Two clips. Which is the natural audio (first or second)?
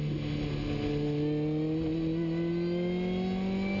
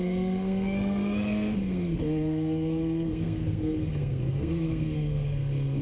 first